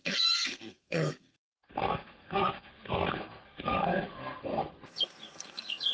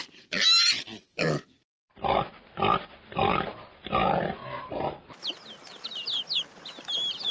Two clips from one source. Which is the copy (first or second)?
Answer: first